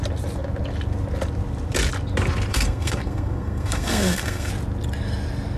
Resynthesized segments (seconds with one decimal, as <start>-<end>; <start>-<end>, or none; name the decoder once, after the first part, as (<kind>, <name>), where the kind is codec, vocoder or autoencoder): 2.5-4.5 (codec, SNAC)